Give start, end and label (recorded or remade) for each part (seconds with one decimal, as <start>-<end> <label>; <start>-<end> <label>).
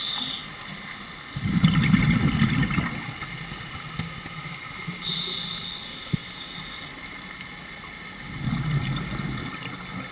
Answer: 0.0-10.1 recorded